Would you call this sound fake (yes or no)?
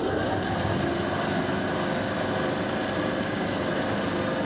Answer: no